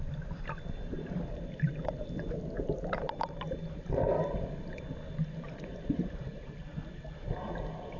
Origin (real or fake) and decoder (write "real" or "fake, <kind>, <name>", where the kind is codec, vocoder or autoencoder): real